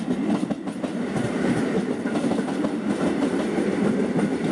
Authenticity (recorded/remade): recorded